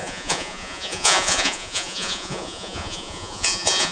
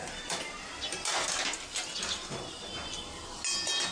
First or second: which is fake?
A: first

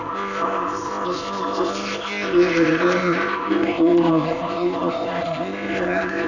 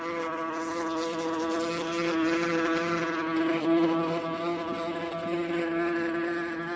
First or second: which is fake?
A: first